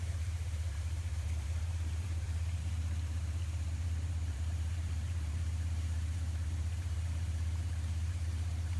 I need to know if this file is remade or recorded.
remade